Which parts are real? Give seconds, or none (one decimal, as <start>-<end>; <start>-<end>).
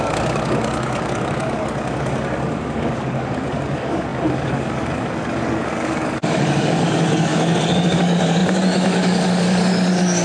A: none